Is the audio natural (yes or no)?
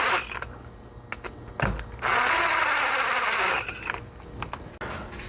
yes